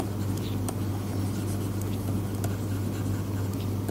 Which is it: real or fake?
real